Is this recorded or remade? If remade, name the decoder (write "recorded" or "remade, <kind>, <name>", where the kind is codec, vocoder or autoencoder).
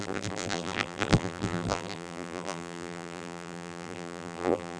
remade, vocoder, BigVGAN v2